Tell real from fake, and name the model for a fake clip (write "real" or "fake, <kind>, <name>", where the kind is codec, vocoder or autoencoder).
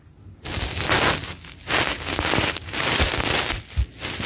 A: real